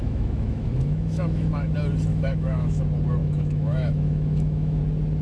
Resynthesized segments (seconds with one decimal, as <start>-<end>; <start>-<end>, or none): 0.0-1.7; 2.1-2.8; 3.2-4.8